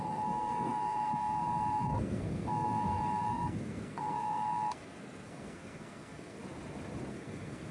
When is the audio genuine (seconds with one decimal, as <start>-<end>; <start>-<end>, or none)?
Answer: 6.4-7.1